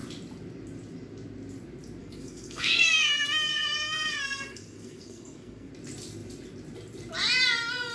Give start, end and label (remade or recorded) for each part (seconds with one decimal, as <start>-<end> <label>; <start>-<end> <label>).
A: 0.0-2.0 recorded; 2.0-5.7 remade; 5.7-7.9 recorded